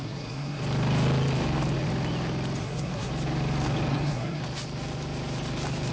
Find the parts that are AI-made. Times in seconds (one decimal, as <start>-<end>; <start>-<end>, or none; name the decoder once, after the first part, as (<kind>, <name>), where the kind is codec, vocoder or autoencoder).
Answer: 0.0-0.6 (codec, SNAC); 2.6-3.1; 3.9-4.4